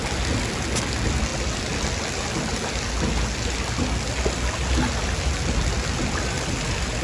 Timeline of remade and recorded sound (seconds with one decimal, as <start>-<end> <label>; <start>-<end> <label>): 0.0-7.0 recorded